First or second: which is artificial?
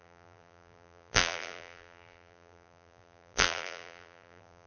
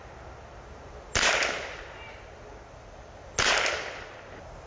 first